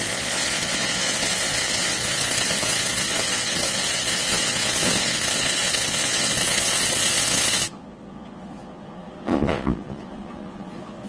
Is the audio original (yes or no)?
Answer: no